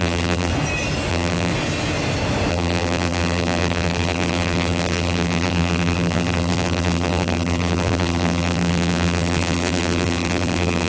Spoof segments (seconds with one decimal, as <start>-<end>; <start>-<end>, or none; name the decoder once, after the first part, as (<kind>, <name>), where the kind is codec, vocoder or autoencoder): 0.0-0.5 (vocoder, BigVGAN v2); 1.1-1.5; 2.5-10.9